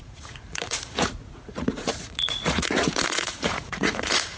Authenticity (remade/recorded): remade